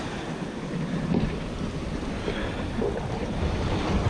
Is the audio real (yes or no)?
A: yes